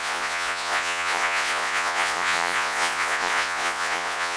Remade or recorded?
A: remade